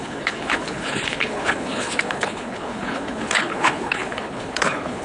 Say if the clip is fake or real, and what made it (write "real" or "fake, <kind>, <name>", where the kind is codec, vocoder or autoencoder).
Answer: fake, codec, HILCodec